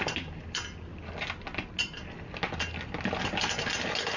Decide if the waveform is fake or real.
real